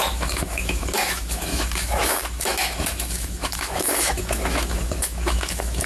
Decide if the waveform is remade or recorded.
remade